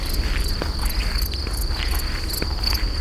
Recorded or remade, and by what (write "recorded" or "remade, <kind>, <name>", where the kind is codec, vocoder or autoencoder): recorded